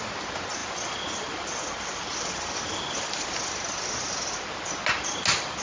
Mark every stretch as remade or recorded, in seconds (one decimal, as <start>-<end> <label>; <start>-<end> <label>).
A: 0.0-5.6 recorded